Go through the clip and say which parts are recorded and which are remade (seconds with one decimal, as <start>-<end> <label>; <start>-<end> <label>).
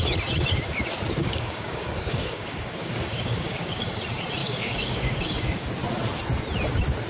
0.0-1.2 recorded; 1.2-4.0 remade; 4.0-4.4 recorded; 4.4-5.7 remade; 5.7-7.1 recorded